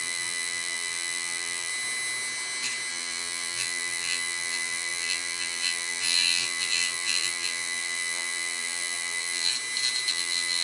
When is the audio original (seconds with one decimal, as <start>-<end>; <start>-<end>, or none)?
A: 1.7-2.9; 9.5-10.1